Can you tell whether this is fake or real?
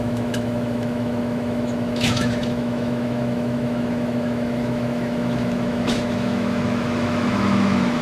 fake